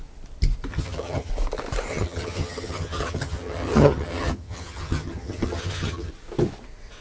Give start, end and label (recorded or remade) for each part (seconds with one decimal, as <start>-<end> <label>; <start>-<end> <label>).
0.0-0.7 recorded; 0.7-1.3 remade; 1.3-1.9 recorded; 1.9-6.1 remade; 6.1-7.0 recorded